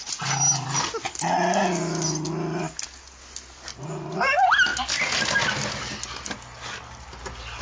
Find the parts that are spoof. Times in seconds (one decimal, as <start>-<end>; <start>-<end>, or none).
none